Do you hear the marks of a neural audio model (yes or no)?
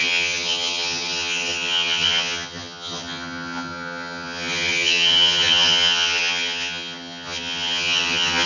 yes